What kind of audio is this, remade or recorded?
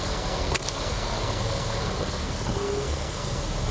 remade